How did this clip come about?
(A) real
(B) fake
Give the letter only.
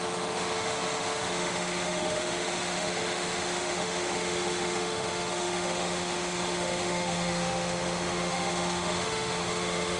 B